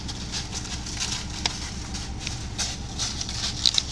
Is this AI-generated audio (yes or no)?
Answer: no